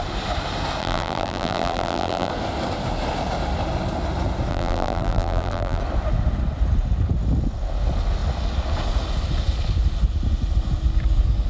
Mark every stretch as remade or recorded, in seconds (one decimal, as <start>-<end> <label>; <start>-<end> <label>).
0.0-0.8 recorded; 0.8-2.3 remade; 2.3-4.5 recorded; 4.5-5.8 remade; 5.8-11.5 recorded